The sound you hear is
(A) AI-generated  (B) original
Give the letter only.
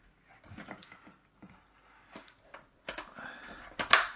B